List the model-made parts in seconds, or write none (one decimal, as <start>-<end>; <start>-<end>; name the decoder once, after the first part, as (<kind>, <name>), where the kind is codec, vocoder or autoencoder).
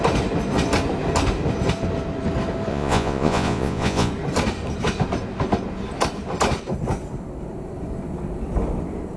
2.7-4.1 (vocoder, Vocos)